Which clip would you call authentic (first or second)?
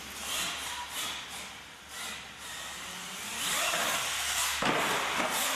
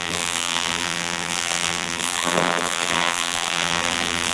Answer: first